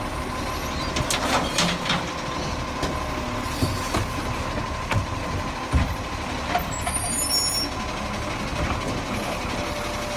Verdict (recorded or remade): recorded